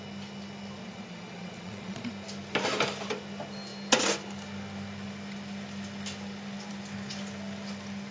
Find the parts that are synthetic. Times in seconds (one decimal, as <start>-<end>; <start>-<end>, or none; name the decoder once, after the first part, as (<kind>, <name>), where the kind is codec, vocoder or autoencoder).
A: 0.8-2.1 (vocoder, Vocos)